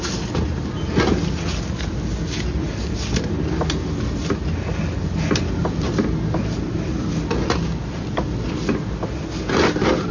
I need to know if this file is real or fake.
real